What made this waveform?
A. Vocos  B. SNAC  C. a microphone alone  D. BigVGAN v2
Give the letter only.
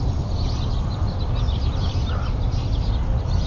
C